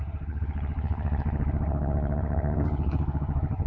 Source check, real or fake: fake